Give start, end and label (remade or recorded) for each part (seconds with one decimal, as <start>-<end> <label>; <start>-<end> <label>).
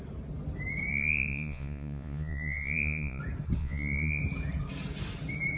0.0-0.9 recorded; 0.9-3.2 remade; 3.2-3.6 recorded; 3.6-4.2 remade; 4.2-5.6 recorded